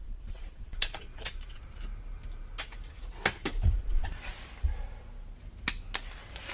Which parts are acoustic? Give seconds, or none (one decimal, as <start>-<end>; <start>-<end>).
1.6-3.8; 4.3-6.5